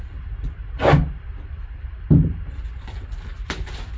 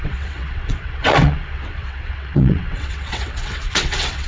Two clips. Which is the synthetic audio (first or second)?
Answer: second